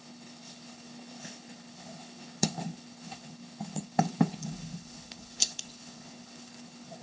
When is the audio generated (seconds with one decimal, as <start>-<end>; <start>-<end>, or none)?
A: 0.0-7.0